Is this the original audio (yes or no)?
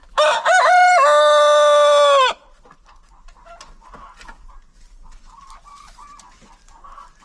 yes